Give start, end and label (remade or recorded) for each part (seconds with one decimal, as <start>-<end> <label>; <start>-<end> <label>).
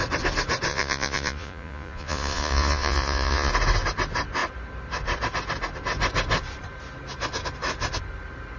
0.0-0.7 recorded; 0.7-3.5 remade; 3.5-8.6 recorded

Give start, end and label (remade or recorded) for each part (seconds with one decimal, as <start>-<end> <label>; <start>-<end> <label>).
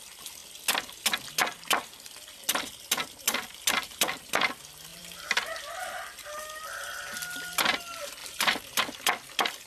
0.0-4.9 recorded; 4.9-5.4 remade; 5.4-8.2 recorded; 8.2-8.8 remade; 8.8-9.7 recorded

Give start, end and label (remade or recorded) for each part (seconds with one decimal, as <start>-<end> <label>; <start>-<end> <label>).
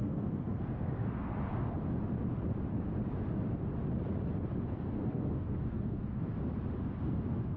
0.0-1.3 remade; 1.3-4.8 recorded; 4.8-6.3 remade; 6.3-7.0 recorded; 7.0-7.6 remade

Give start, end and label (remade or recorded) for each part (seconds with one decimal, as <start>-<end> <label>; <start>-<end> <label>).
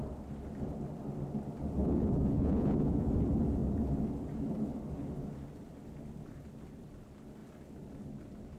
0.0-1.8 recorded; 1.8-3.1 remade; 3.1-8.6 recorded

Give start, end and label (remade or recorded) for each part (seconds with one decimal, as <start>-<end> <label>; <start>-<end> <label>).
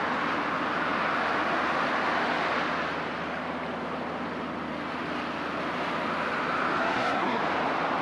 0.0-6.8 recorded; 6.8-7.4 remade; 7.4-8.0 recorded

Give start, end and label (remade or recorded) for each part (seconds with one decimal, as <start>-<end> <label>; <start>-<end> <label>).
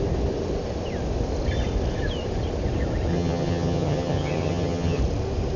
0.0-3.1 recorded; 3.1-5.0 remade; 5.0-5.6 recorded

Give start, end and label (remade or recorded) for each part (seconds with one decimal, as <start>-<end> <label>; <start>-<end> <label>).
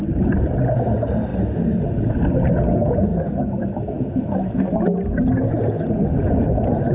0.0-3.1 recorded; 3.1-4.6 remade; 4.6-6.9 recorded